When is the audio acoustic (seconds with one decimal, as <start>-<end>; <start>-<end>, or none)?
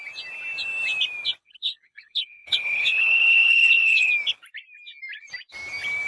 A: 0.0-1.4; 4.1-6.1